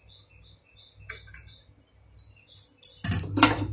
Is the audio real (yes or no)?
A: yes